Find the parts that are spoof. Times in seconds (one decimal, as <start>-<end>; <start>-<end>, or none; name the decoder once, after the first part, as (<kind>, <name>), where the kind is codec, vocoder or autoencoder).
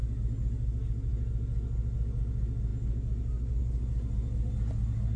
none